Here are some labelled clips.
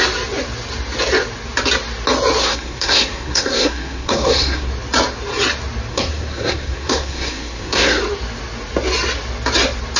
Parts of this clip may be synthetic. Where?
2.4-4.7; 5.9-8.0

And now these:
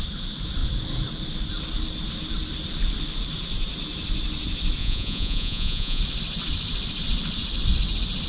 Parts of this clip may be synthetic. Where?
4.8-6.0

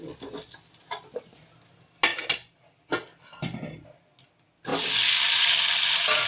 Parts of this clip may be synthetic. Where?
2.1-2.8; 3.4-4.3

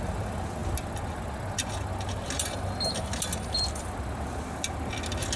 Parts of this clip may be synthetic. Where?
none

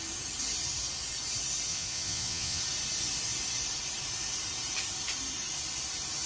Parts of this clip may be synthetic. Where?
1.7-2.6

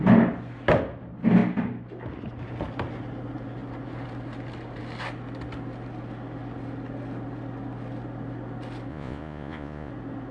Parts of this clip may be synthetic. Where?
8.9-9.9

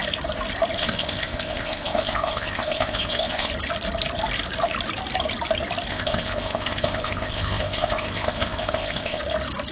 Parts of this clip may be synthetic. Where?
0.8-3.5; 5.9-9.2